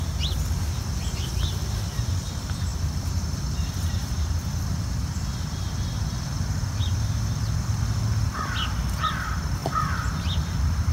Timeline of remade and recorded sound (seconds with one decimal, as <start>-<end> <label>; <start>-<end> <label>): 0.0-10.9 remade